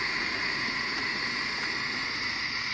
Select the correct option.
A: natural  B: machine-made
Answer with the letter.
B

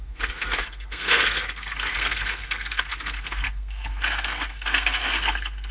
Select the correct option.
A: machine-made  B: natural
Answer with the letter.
A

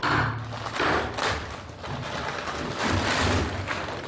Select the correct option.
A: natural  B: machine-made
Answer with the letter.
A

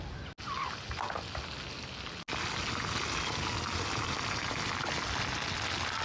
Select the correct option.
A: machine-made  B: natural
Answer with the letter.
B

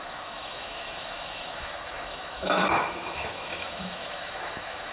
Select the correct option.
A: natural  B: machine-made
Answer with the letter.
B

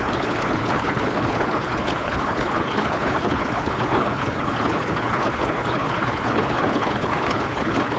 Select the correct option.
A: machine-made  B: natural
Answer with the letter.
A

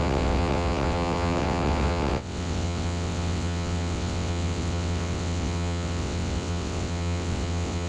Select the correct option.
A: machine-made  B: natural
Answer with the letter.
A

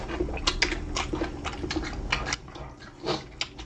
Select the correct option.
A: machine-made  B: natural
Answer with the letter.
B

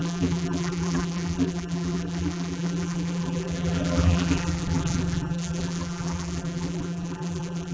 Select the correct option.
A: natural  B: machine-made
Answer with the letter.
B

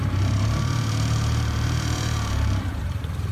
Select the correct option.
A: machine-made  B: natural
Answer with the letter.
A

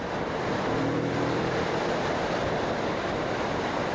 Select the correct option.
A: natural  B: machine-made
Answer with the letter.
B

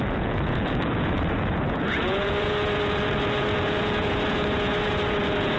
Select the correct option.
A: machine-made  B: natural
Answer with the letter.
A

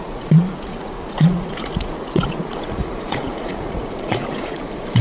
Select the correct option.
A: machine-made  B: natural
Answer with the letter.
A